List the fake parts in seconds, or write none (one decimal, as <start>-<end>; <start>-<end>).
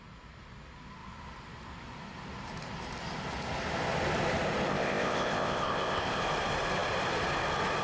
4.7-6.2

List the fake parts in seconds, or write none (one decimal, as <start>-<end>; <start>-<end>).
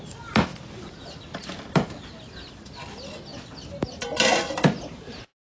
none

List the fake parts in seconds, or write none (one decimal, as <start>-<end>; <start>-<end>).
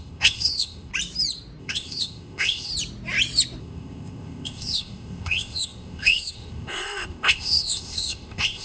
0.0-0.9; 1.6-2.7; 3.6-8.6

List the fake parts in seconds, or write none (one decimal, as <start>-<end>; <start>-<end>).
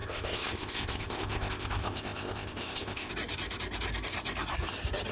0.0-3.1